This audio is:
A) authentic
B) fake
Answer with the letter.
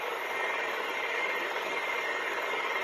B